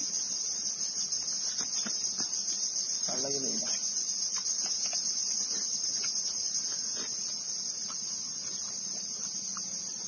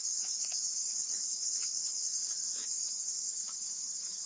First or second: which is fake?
second